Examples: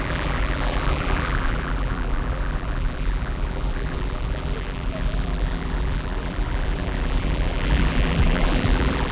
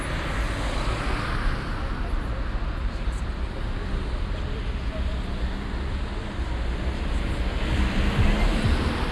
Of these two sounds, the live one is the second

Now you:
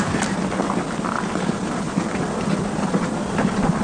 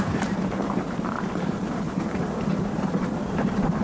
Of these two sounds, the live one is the first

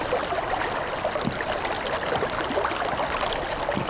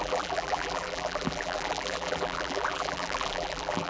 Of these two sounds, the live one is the first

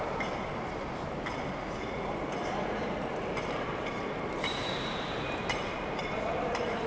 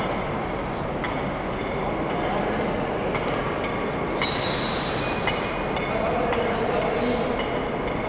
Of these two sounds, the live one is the second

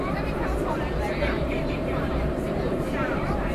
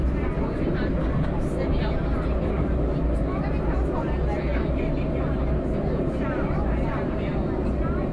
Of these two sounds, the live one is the second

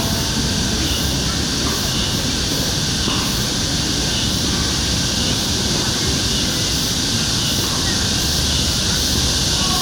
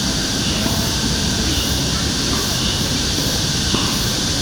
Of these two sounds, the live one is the first